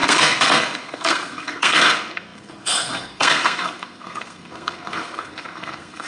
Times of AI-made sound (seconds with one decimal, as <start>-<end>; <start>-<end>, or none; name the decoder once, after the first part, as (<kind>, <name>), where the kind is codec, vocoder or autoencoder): 0.0-6.1 (codec, SNAC)